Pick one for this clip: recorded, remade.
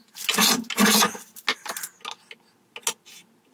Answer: recorded